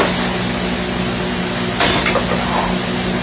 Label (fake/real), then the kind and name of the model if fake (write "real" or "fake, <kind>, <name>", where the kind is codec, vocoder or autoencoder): real